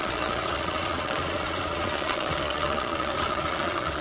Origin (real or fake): fake